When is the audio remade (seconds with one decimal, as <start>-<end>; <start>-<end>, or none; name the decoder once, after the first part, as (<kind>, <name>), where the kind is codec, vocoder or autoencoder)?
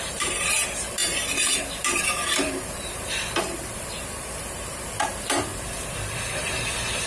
0.0-5.5 (vocoder, BigVGAN v2); 6.3-7.1